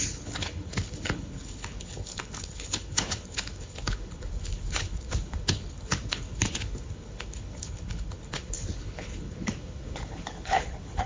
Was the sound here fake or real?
fake